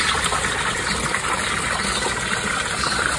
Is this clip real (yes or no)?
no